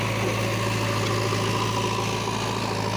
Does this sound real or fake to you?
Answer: real